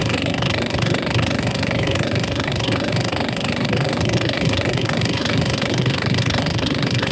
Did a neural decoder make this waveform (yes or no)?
yes